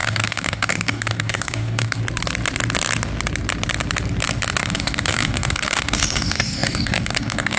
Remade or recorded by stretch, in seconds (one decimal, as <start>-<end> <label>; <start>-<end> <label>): 0.0-2.0 remade; 2.0-4.6 recorded; 4.6-7.6 remade

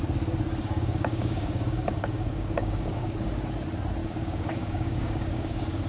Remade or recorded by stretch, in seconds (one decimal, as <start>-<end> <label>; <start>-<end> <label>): 0.0-0.6 recorded; 0.6-3.3 remade; 3.3-4.0 recorded; 4.0-5.9 remade

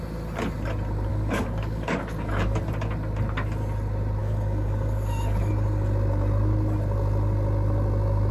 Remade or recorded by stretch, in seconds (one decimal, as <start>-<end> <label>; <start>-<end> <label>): 0.0-1.1 recorded; 1.1-2.6 remade; 2.6-4.2 recorded; 4.2-5.5 remade; 5.5-8.3 recorded